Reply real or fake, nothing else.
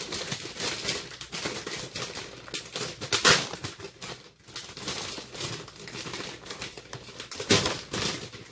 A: real